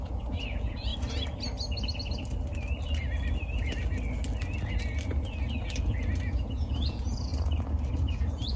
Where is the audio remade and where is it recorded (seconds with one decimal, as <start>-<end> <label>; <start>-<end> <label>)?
0.0-0.9 remade; 0.9-5.8 recorded; 5.8-7.3 remade; 7.3-7.9 recorded; 7.9-8.6 remade